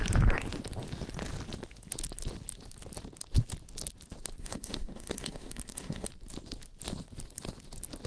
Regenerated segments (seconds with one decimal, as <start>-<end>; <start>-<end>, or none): 4.4-6.1